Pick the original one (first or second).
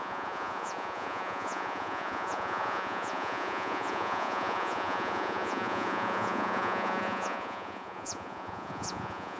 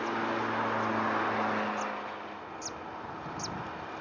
second